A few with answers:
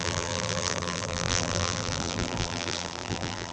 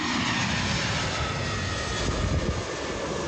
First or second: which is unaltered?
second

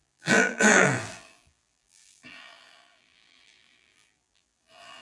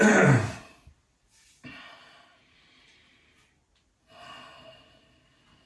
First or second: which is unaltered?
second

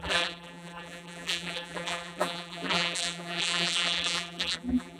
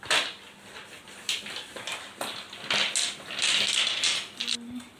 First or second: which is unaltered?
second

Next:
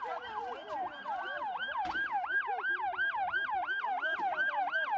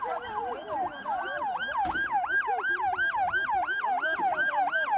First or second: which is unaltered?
second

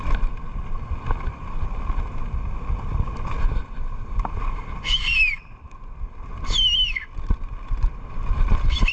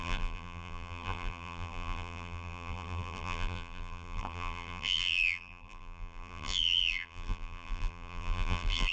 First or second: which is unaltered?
first